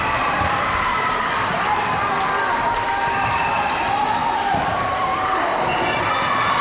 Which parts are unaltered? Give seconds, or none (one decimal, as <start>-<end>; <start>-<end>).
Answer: 0.0-4.2; 5.1-5.5; 6.1-6.6